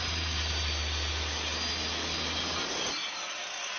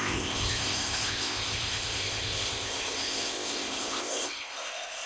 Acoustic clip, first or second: first